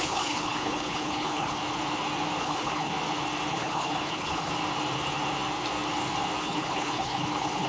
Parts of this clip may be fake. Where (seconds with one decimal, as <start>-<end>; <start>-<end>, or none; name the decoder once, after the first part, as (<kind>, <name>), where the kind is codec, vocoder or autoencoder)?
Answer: 0.0-1.6 (codec, HILCodec); 2.4-2.9; 3.5-4.5; 6.4-7.7